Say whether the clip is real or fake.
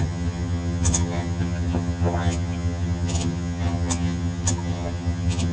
fake